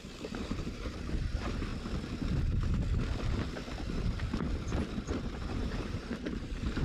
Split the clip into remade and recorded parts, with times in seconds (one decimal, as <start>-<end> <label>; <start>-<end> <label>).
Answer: 0.0-1.7 remade; 1.7-5.1 recorded; 5.1-6.8 remade